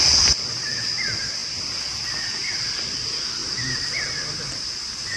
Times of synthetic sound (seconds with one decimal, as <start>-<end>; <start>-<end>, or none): 2.4-2.9; 3.4-4.8